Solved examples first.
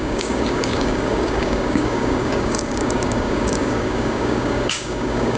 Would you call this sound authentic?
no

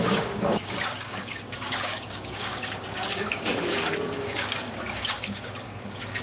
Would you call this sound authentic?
no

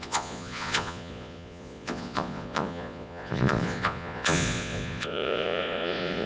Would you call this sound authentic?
no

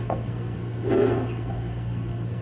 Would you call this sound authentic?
no